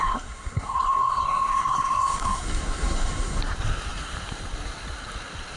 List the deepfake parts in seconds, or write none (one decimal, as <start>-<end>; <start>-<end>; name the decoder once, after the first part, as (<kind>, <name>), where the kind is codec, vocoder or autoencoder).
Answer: 0.0-3.4 (codec, SNAC)